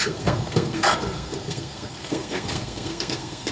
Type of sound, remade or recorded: remade